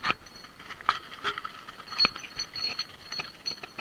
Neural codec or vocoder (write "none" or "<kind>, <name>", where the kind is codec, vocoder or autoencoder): none